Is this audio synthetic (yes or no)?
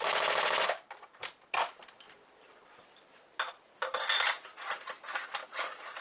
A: no